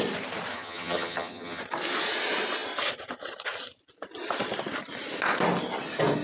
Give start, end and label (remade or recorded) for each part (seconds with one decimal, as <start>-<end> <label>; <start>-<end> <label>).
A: 0.0-0.5 recorded; 0.5-1.6 remade; 1.6-6.2 recorded